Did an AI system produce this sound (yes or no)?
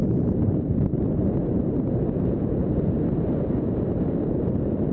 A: yes